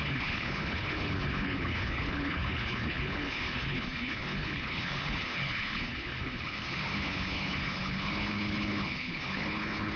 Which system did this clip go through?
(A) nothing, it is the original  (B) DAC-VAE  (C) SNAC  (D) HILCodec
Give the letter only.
D